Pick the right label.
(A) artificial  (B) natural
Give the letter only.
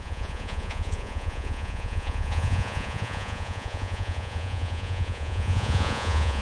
A